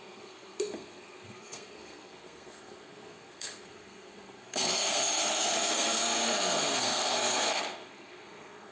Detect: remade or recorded remade